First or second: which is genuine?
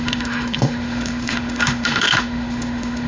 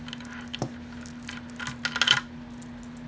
second